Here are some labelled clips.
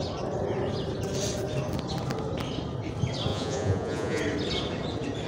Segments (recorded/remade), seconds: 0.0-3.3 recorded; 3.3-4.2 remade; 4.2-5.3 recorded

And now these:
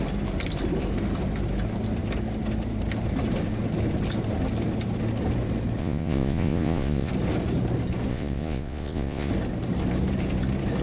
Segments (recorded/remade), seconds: 0.0-5.8 recorded; 5.8-7.1 remade; 7.1-8.1 recorded; 8.1-9.3 remade; 9.3-10.8 recorded

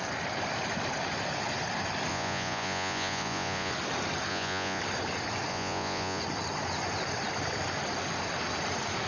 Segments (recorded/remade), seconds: 0.0-2.1 recorded; 2.1-3.7 remade; 3.7-4.3 recorded; 4.3-4.8 remade; 4.8-5.5 recorded; 5.5-6.2 remade; 6.2-9.1 recorded

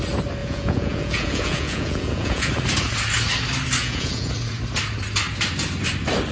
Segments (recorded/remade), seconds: 0.0-0.4 recorded; 0.4-2.5 remade; 2.5-3.8 recorded; 3.8-4.3 remade; 4.3-6.3 recorded

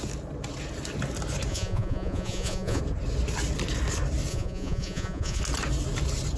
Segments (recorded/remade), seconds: 0.0-1.5 recorded; 1.5-2.8 remade; 2.8-4.3 recorded; 4.3-5.4 remade; 5.4-6.4 recorded

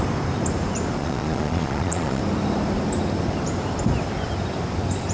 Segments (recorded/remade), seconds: 0.0-1.0 recorded; 1.0-2.2 remade; 2.2-5.1 recorded